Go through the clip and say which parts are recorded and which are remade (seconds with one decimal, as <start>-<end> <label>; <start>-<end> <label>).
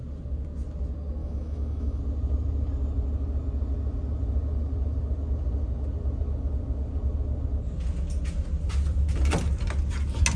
0.0-1.2 recorded; 1.2-2.0 remade; 2.0-10.4 recorded